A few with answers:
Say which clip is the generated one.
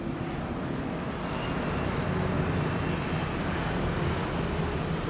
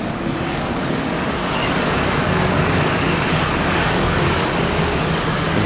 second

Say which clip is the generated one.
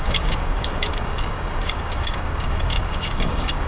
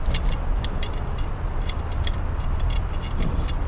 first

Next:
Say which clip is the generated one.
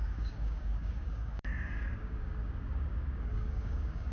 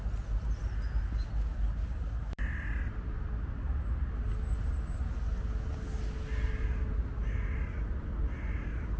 first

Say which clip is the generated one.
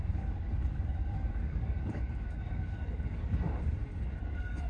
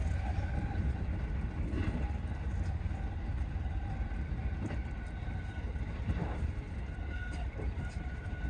first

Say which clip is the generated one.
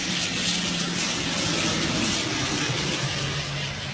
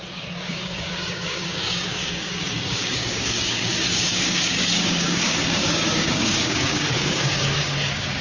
second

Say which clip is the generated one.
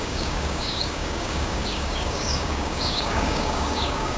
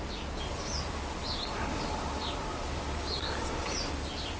first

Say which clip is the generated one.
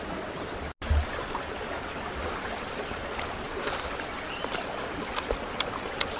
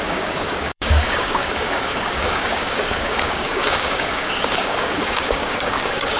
second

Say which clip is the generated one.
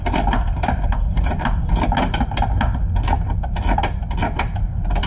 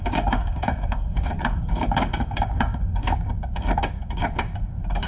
second